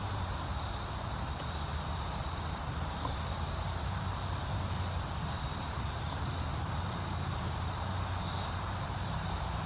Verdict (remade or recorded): remade